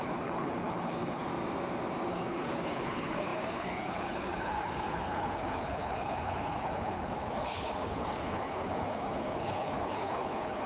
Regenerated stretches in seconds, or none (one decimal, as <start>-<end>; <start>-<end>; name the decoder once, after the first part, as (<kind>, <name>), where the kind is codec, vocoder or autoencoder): 0.0-1.3 (codec, HILCodec); 2.1-10.7